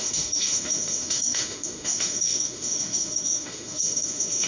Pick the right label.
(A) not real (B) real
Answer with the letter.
A